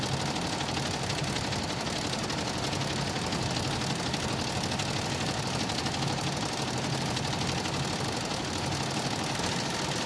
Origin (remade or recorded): recorded